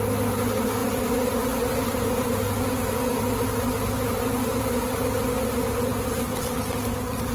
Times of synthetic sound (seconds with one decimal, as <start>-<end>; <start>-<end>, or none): none